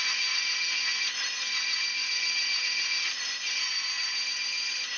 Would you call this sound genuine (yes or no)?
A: yes